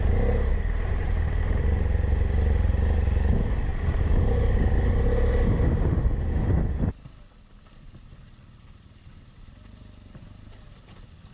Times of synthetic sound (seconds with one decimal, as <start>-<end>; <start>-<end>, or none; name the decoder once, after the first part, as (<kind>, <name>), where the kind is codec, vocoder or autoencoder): none